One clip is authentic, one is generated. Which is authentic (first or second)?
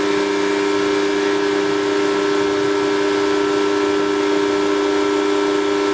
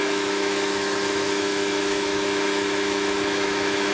first